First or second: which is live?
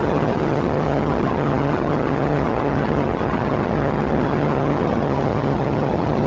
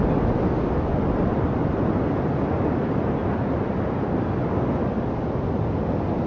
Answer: second